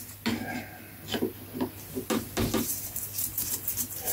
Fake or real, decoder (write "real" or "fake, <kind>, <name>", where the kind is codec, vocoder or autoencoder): real